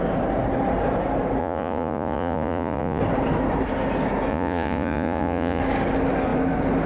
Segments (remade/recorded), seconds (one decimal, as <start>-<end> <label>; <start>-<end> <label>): 0.0-1.4 recorded; 1.4-3.0 remade; 3.0-4.3 recorded; 4.3-5.6 remade; 5.6-6.9 recorded